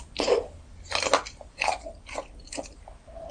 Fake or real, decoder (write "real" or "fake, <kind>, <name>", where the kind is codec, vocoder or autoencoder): real